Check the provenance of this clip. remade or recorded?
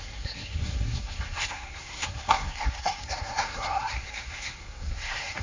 remade